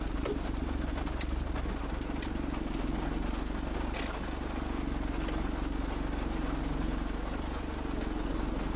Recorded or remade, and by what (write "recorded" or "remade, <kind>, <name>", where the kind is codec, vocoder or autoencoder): recorded